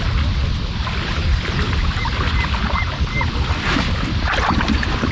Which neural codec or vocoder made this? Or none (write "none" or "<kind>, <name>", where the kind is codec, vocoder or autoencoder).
none